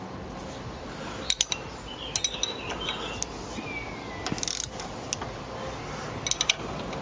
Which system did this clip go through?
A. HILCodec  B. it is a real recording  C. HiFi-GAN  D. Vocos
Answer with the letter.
B